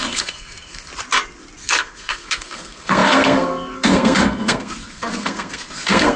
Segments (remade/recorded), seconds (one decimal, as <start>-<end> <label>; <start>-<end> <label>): 0.0-0.9 remade; 0.9-1.6 recorded; 1.6-6.2 remade